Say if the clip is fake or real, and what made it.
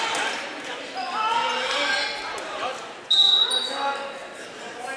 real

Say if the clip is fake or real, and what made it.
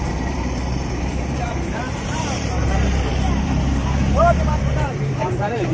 fake, vocoder, BigVGAN v2